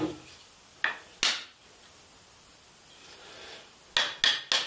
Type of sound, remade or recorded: recorded